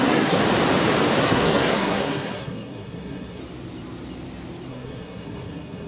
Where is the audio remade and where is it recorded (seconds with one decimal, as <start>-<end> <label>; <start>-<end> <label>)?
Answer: 0.0-0.4 remade; 0.4-1.2 recorded; 1.2-3.4 remade; 3.4-4.7 recorded; 4.7-5.9 remade